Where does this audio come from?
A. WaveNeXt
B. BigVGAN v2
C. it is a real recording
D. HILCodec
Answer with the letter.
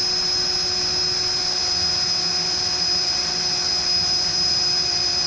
C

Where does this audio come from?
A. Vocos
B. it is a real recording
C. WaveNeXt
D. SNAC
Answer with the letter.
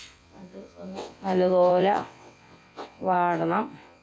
C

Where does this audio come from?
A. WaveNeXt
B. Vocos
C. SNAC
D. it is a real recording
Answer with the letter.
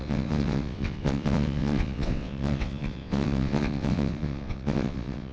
A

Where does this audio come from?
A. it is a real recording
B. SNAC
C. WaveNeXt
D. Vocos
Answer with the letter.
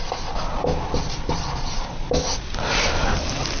A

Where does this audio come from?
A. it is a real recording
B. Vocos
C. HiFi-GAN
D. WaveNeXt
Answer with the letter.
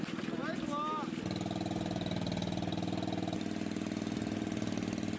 A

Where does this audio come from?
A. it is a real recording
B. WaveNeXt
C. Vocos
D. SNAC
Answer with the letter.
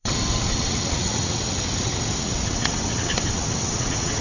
B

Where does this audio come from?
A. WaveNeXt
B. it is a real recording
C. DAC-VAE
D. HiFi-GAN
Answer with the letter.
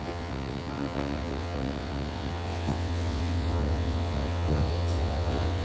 A